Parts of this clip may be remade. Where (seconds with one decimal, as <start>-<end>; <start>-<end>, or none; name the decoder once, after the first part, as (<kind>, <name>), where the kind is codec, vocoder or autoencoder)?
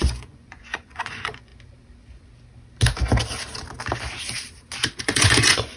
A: 0.0-1.5 (vocoder, Vocos); 5.0-5.8